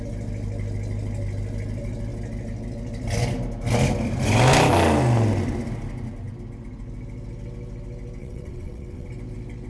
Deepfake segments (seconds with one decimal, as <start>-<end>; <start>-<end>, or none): 8.2-9.1